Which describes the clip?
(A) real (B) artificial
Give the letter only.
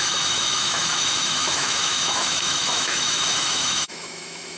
B